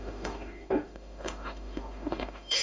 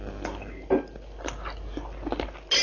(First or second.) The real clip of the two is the second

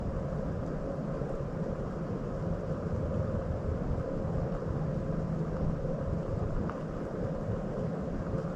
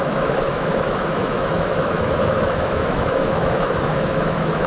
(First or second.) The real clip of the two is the first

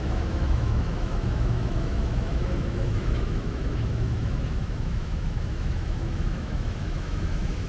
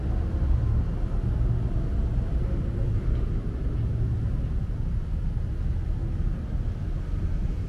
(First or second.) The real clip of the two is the second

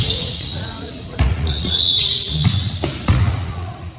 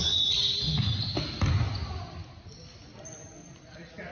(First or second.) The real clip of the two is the second